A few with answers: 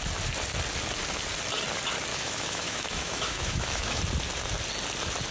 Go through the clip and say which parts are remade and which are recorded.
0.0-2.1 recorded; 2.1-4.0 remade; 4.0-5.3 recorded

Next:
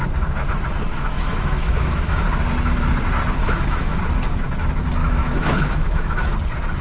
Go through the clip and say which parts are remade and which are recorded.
0.0-0.9 recorded; 0.9-2.2 remade; 2.2-3.4 recorded; 3.4-4.0 remade; 4.0-5.0 recorded; 5.0-6.3 remade; 6.3-6.8 recorded

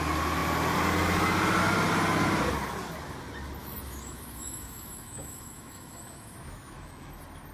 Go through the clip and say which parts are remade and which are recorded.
0.0-3.6 recorded; 3.6-7.1 remade; 7.1-7.5 recorded